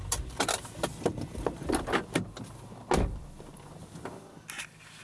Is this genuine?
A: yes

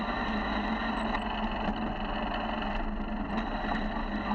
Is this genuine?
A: yes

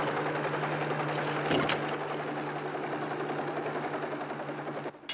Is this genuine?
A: yes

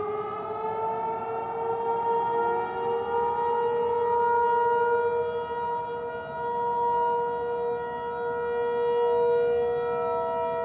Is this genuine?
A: yes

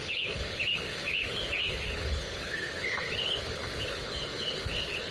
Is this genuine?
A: no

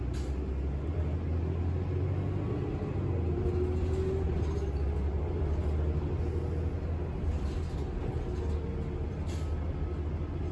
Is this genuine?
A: yes